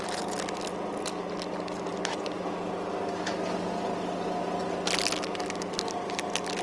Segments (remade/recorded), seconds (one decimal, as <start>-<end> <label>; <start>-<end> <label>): 0.0-6.6 recorded